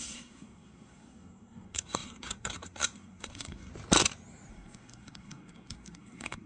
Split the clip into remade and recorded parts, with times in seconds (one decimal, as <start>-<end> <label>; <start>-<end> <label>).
0.0-3.7 remade; 3.7-4.5 recorded; 4.5-6.5 remade